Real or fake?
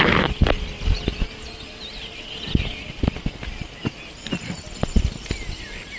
real